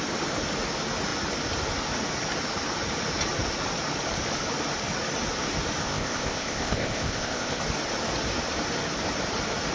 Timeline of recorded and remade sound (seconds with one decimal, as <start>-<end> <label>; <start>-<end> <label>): 0.0-5.8 recorded; 5.8-7.6 remade; 7.6-9.7 recorded